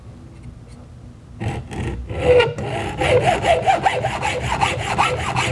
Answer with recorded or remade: recorded